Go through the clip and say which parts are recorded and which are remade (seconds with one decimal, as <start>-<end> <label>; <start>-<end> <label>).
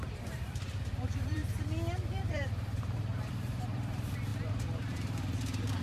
0.0-1.4 remade; 1.4-2.2 recorded; 2.2-5.8 remade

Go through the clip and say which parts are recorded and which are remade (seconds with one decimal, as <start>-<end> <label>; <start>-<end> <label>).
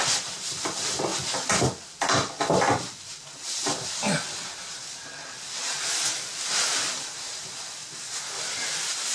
0.0-9.1 recorded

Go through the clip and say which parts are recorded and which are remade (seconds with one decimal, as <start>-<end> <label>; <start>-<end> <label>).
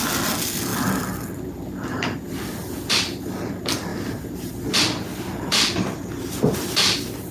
0.0-3.9 recorded; 3.9-4.5 remade; 4.5-7.3 recorded